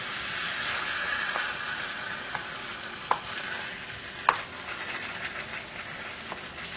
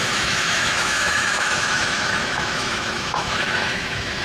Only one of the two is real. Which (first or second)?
first